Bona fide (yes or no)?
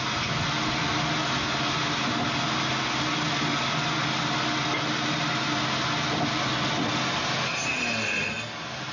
yes